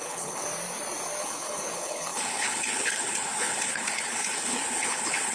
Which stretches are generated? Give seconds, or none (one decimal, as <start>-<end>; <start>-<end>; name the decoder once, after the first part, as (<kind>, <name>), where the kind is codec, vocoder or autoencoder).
0.0-0.4 (codec, HILCodec); 1.2-5.3